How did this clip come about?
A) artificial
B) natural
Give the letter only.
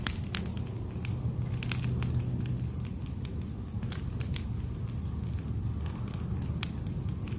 B